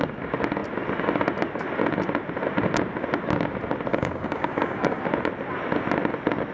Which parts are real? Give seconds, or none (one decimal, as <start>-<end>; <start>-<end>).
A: 0.0-3.9; 5.0-6.5